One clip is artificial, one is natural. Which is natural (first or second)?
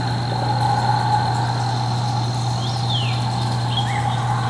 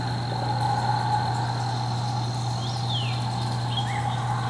second